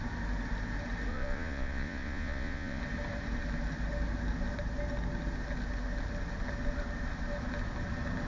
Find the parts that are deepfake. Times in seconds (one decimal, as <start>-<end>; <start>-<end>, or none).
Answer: 1.1-2.8